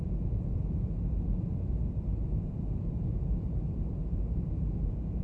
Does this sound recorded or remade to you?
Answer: remade